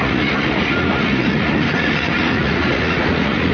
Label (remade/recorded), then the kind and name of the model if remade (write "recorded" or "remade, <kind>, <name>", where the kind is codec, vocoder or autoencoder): remade, vocoder, Vocos